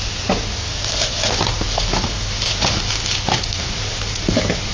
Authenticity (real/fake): fake